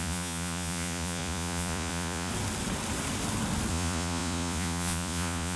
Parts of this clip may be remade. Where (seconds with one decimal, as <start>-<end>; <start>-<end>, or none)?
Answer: 0.0-2.3; 3.7-5.6